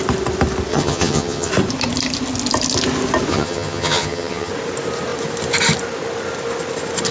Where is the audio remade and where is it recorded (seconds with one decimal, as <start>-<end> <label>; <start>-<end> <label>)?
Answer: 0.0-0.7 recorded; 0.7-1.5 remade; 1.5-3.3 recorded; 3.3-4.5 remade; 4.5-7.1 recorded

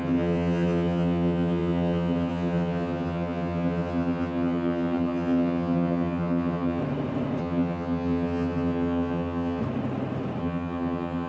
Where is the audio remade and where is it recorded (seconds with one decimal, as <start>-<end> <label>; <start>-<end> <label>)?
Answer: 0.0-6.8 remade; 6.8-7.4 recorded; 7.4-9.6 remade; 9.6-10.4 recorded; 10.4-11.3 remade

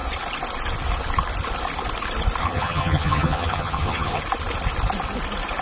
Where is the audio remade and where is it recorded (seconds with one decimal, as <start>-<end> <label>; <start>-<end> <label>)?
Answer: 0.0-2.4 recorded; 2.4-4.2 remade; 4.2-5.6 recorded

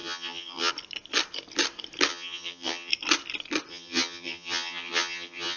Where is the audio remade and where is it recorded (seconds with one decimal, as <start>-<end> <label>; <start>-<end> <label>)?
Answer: 0.0-0.7 remade; 0.7-2.1 recorded; 2.1-2.9 remade; 2.9-3.7 recorded; 3.7-5.6 remade

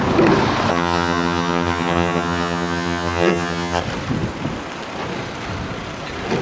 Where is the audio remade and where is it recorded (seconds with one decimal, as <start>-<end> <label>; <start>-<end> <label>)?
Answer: 0.0-0.7 recorded; 0.7-3.8 remade; 3.8-6.4 recorded